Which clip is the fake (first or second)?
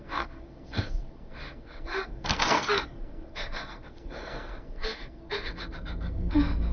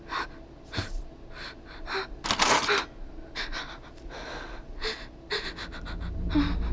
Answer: first